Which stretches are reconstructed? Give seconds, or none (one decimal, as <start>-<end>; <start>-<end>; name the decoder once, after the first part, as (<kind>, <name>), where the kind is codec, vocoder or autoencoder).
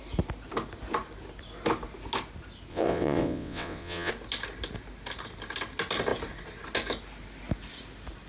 2.7-4.1 (vocoder, WaveNeXt)